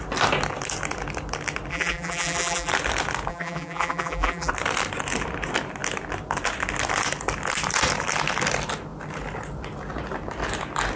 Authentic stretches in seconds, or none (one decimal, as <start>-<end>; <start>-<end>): 0.0-1.7; 2.7-3.3; 4.5-11.0